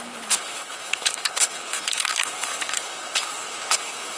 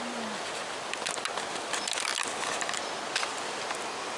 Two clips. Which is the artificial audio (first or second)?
first